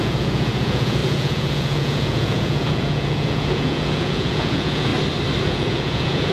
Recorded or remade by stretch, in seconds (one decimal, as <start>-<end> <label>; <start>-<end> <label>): 0.0-4.9 remade; 4.9-5.4 recorded; 5.4-6.3 remade